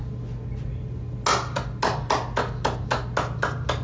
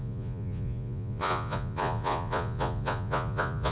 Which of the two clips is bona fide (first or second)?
first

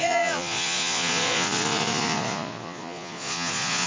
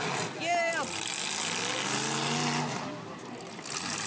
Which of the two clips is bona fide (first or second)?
second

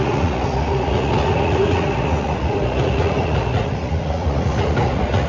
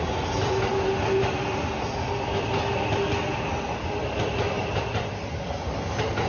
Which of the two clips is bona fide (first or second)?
second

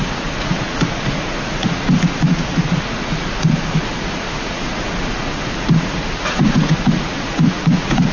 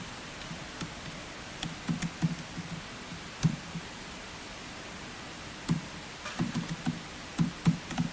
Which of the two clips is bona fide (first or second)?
second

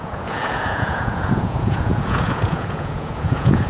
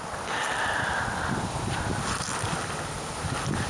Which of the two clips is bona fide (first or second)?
second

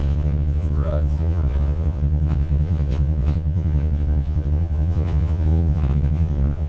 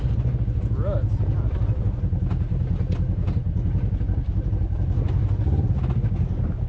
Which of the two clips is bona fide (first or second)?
second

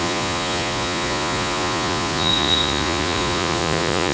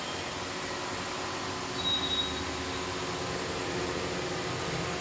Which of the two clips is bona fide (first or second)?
second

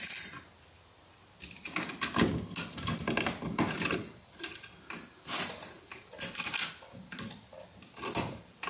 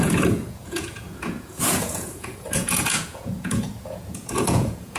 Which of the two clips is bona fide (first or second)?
first